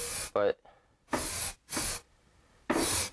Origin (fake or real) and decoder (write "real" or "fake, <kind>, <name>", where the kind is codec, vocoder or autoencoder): real